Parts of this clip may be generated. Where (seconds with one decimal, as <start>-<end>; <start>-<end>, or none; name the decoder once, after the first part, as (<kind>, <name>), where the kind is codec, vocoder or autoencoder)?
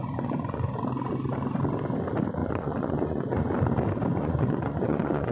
0.0-0.8 (vocoder, Vocos); 2.4-3.5; 4.1-5.3